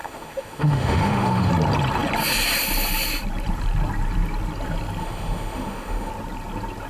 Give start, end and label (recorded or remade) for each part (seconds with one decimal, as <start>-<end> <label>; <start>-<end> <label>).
0.0-1.5 remade; 1.5-5.0 recorded; 5.0-6.1 remade; 6.1-6.9 recorded